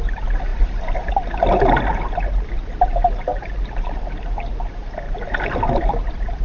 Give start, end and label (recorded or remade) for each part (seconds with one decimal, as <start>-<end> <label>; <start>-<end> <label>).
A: 0.0-6.4 recorded